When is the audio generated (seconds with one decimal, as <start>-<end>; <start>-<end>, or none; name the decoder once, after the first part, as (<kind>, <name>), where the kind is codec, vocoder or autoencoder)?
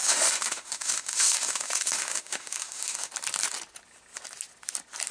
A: 0.0-3.1 (autoencoder, DAC-VAE)